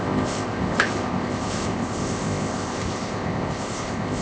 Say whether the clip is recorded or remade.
remade